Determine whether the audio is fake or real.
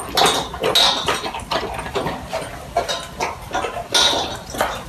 real